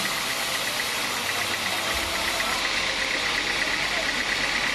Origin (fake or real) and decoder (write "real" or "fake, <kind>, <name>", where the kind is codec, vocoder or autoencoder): real